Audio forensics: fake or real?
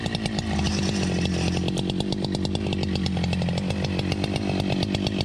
real